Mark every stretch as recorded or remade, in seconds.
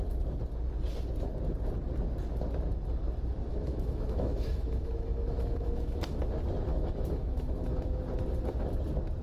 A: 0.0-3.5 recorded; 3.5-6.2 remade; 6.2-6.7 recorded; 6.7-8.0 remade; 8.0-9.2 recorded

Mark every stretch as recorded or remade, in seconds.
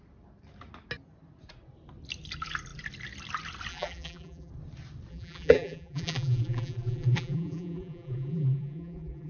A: 0.0-3.7 recorded; 3.7-4.5 remade; 4.5-5.1 recorded; 5.1-9.3 remade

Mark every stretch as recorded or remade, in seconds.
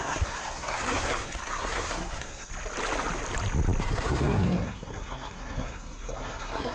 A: 0.0-2.5 remade; 2.5-3.8 recorded; 3.8-6.7 remade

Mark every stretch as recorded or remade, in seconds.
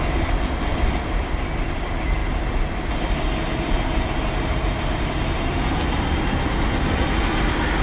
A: 0.0-7.8 recorded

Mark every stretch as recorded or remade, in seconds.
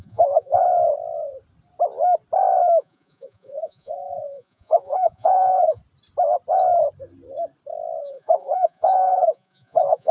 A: 0.0-0.6 remade; 0.6-2.8 recorded; 2.8-5.8 remade; 5.8-8.0 recorded; 8.0-10.1 remade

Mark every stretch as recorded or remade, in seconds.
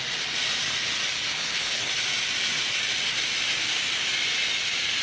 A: 0.0-1.3 recorded; 1.3-1.9 remade; 1.9-5.0 recorded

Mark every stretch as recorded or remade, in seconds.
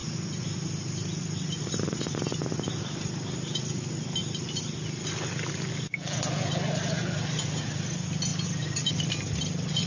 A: 0.0-9.9 recorded